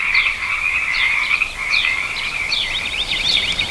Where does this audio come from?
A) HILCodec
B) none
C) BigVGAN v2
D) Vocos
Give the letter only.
C